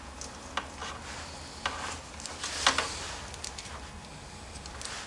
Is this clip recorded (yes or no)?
yes